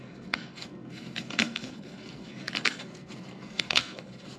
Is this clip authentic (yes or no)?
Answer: no